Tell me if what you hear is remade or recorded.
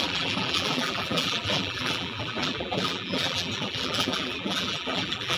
remade